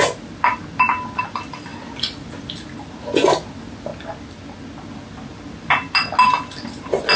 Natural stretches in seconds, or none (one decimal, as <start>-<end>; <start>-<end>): 0.0-7.2